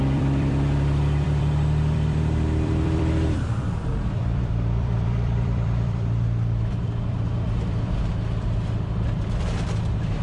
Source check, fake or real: fake